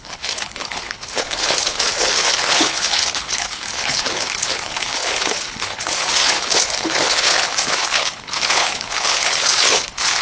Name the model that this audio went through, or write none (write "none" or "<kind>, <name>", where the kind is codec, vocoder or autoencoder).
codec, HILCodec